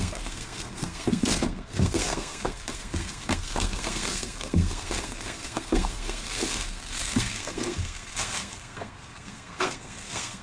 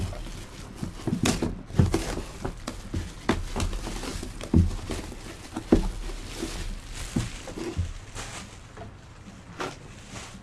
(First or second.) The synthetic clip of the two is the first